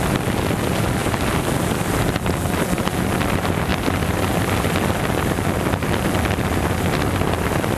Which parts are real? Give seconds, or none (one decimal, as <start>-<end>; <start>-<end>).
0.0-1.0; 2.8-7.8